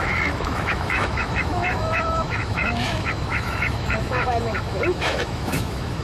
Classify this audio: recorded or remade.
remade